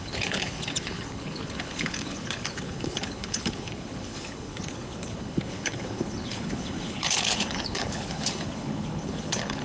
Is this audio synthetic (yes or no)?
yes